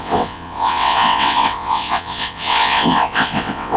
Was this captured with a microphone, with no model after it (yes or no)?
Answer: no